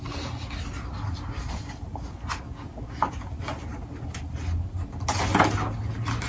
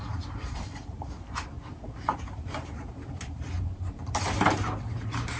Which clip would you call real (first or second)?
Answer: first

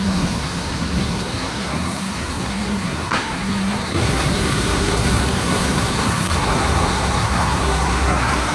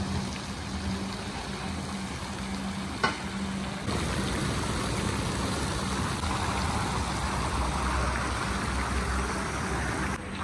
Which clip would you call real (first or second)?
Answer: second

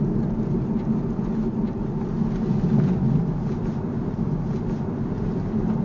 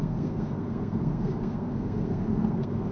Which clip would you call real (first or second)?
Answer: first